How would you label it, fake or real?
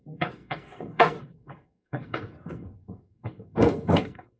fake